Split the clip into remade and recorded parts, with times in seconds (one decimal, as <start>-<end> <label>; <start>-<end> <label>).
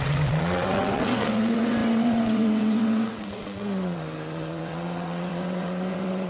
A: 0.0-6.3 remade